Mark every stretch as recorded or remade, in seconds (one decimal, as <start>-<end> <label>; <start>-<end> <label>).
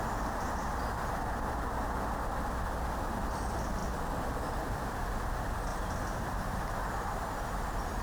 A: 0.0-8.0 recorded